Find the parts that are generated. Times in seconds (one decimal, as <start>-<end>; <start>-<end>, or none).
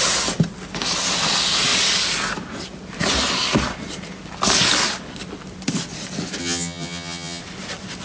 6.4-7.4